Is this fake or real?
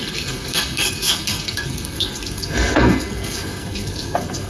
fake